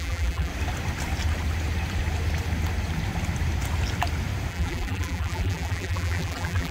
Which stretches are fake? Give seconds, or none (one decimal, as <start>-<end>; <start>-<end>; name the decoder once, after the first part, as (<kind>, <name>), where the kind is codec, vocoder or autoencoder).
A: 0.0-0.5 (vocoder, BigVGAN v2); 4.5-6.7